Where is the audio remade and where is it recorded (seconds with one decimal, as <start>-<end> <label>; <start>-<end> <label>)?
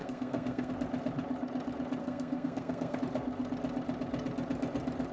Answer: 0.0-0.7 remade; 0.7-2.0 recorded; 2.0-3.0 remade; 3.0-5.1 recorded